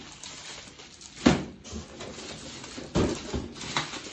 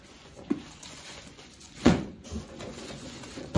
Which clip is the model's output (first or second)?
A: second